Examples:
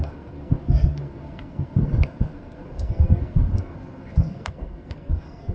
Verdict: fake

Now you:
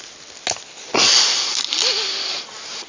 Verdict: real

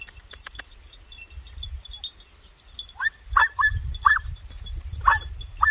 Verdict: real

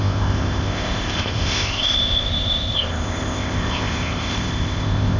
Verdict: fake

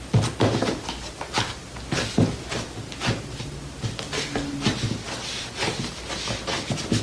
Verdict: real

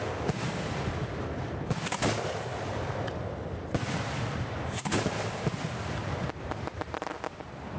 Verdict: real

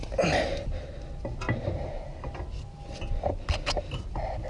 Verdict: real